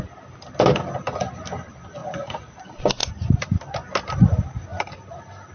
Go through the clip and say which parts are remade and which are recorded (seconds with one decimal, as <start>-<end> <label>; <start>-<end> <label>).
0.0-2.0 recorded; 2.0-2.6 remade; 2.6-5.5 recorded